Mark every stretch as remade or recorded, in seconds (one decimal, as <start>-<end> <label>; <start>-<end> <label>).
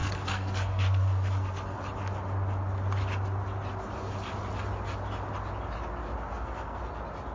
0.0-1.8 remade; 1.8-6.3 recorded; 6.3-6.8 remade; 6.8-7.3 recorded